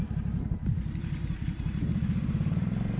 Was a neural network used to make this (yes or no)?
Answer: yes